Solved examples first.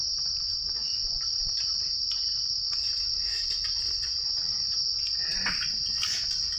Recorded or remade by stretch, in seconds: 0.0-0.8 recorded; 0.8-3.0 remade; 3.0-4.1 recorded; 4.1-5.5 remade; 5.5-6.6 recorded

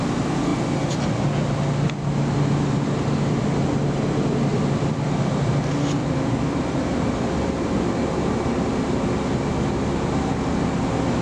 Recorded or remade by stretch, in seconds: 0.0-0.5 recorded; 0.5-1.1 remade; 1.1-4.5 recorded; 4.5-5.1 remade; 5.1-6.0 recorded; 6.0-7.7 remade; 7.7-11.2 recorded

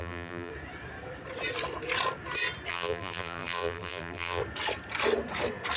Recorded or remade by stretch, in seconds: 0.0-0.5 remade; 0.5-2.7 recorded; 2.7-4.4 remade; 4.4-5.8 recorded